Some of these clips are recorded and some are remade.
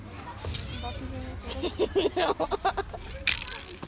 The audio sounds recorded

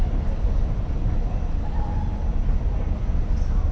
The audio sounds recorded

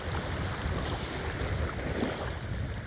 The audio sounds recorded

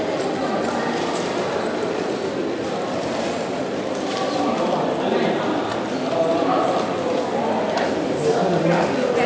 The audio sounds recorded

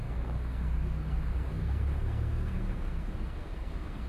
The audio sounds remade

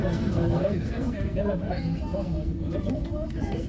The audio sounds remade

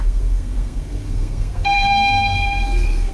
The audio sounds remade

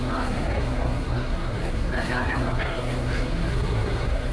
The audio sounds remade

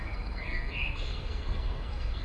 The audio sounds remade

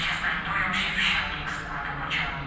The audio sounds recorded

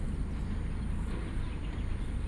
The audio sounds recorded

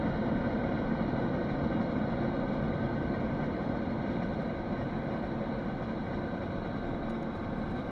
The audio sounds recorded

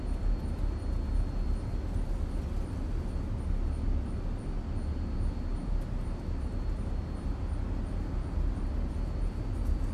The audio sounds recorded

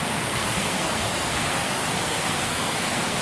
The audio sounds remade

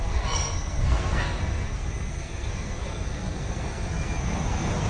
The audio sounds remade